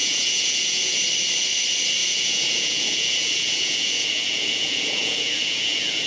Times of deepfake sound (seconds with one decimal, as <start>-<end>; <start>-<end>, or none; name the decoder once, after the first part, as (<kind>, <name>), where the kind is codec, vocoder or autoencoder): 0.0-1.0 (vocoder, Vocos); 2.0-6.1